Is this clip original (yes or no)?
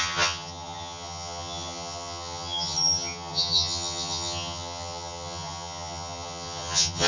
no